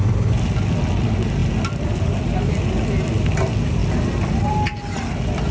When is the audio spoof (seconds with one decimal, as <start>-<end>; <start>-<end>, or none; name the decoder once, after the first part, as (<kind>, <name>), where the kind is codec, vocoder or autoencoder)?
none